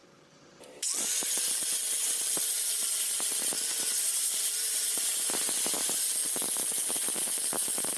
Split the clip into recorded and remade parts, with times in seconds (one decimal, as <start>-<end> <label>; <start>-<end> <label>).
0.0-4.2 recorded; 4.2-6.2 remade; 6.2-6.9 recorded; 6.9-8.0 remade

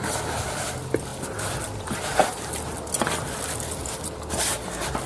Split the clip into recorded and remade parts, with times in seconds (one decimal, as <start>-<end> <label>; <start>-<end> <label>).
0.0-5.1 remade

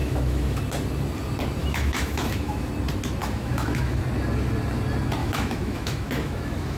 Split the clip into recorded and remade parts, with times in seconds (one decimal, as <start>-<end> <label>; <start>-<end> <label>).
0.0-0.6 remade; 0.6-1.6 recorded; 1.6-2.7 remade; 2.7-3.2 recorded; 3.2-4.0 remade; 4.0-5.2 recorded; 5.2-6.8 remade

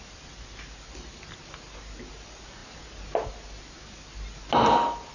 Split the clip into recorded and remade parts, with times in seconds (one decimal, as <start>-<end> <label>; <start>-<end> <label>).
0.0-5.1 recorded

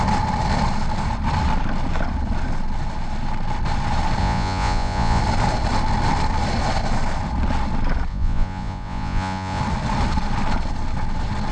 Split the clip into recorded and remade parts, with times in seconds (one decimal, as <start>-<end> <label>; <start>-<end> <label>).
0.0-4.2 recorded; 4.2-5.2 remade; 5.2-8.1 recorded; 8.1-9.6 remade; 9.6-11.5 recorded

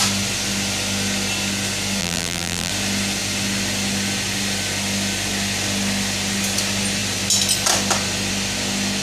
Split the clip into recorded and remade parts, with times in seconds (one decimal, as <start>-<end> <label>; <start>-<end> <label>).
0.0-2.0 recorded; 2.0-2.7 remade; 2.7-9.0 recorded

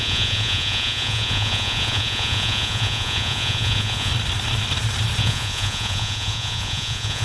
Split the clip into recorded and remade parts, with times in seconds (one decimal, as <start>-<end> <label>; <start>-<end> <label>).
0.0-4.1 remade; 4.1-5.2 recorded; 5.2-7.2 remade

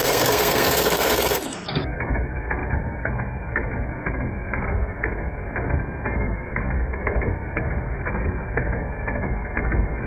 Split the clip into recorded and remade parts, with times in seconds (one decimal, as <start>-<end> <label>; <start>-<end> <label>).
0.0-10.1 remade